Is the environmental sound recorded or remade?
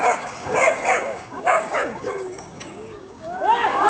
remade